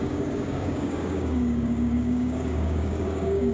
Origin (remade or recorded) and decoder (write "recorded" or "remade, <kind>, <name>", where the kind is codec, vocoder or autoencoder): remade, codec, DAC